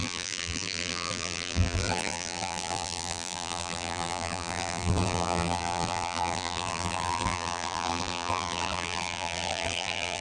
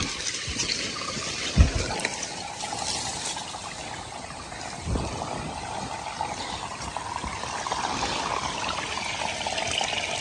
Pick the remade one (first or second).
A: first